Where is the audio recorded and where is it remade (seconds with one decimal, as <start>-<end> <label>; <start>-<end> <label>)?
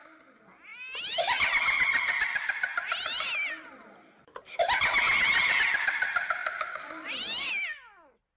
0.0-8.4 recorded